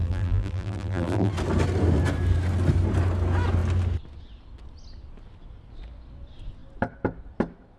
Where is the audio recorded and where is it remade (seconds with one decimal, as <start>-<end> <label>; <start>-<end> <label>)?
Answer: 0.0-1.3 remade; 1.3-7.8 recorded